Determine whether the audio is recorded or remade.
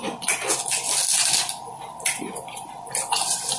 recorded